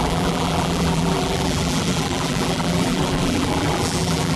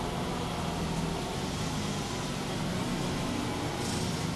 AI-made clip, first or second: first